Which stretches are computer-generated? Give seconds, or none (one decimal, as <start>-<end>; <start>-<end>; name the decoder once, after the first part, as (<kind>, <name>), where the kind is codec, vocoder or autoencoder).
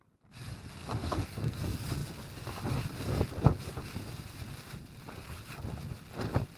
0.8-1.6 (codec, SNAC)